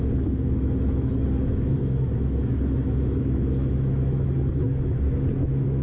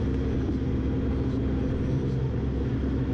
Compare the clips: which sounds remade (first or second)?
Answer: first